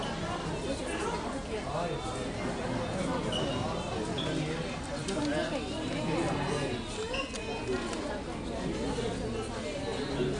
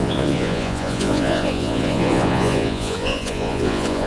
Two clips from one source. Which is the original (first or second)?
first